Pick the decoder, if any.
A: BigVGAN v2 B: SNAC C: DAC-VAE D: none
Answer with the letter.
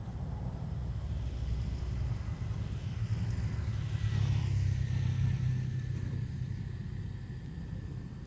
A